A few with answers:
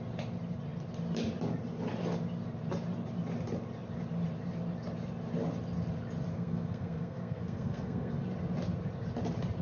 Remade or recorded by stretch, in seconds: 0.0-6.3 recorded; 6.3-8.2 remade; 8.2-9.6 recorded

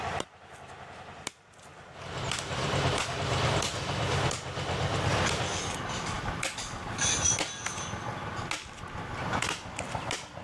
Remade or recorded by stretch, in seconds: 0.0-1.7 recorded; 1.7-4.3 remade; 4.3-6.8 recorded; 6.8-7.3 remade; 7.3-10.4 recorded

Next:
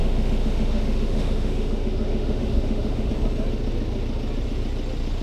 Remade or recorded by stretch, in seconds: 0.0-3.1 remade; 3.1-5.2 recorded

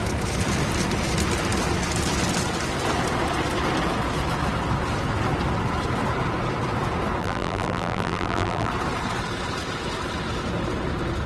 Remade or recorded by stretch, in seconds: 0.0-7.2 recorded; 7.2-8.7 remade; 8.7-11.3 recorded

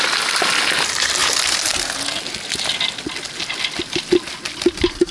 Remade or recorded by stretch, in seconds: 0.0-1.2 recorded; 1.2-1.9 remade; 1.9-5.1 recorded

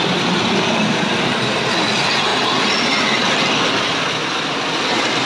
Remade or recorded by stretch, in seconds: 0.0-5.3 recorded